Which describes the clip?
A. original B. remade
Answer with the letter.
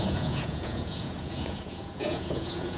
B